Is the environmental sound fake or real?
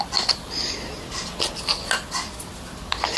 real